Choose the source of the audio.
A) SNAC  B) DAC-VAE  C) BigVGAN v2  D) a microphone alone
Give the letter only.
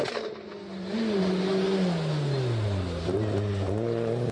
D